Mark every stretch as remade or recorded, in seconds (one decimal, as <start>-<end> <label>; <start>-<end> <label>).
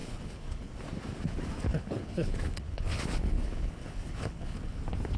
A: 0.0-0.7 remade; 0.7-1.7 recorded; 1.7-4.8 remade; 4.8-5.2 recorded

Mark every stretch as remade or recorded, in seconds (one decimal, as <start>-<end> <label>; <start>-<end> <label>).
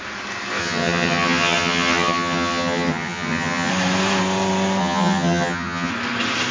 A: 0.0-0.6 recorded; 0.6-3.7 remade; 3.7-4.8 recorded; 4.8-5.9 remade; 5.9-6.5 recorded